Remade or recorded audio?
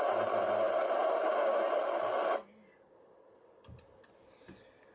recorded